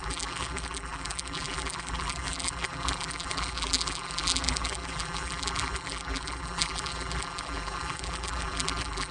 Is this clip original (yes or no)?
no